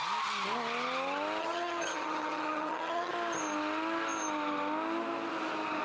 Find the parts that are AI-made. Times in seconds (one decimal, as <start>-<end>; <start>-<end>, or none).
1.4-3.1